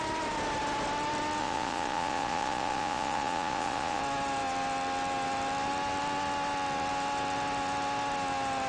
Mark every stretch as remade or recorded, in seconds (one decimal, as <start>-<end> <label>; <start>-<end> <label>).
0.0-1.4 recorded; 1.4-4.0 remade; 4.0-8.7 recorded